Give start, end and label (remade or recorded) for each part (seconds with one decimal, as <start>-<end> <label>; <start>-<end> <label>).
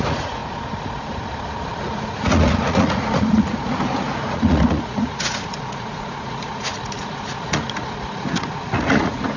0.0-0.4 remade; 0.4-1.9 recorded; 1.9-9.4 remade